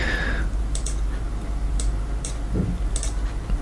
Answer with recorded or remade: recorded